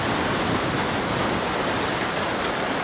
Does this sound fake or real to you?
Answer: real